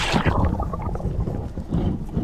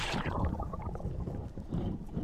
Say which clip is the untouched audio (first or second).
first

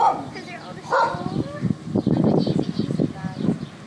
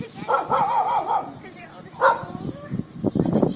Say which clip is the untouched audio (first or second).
first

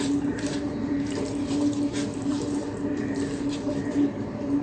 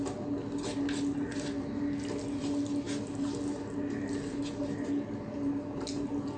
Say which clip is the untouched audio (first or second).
second